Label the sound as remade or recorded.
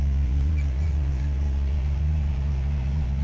remade